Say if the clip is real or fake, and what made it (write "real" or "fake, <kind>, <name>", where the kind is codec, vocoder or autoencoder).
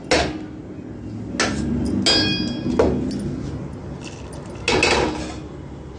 real